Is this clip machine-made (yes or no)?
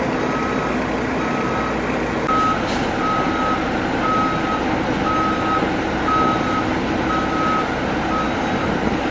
no